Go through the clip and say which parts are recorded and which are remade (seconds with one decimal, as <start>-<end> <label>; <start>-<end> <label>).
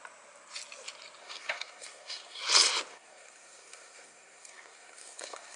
0.0-1.2 recorded; 1.2-2.4 remade; 2.4-2.9 recorded; 2.9-5.6 remade